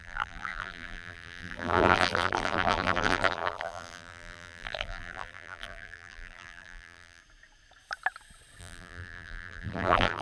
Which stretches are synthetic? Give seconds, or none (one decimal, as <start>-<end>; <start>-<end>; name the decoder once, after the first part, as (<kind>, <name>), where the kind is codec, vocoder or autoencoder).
0.0-7.2 (vocoder, BigVGAN v2); 8.6-10.2